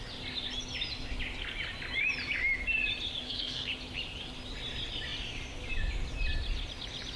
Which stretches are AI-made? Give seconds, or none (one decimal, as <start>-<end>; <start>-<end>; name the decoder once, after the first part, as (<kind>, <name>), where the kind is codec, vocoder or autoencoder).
3.2-3.7 (codec, SNAC)